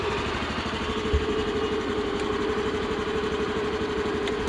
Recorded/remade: recorded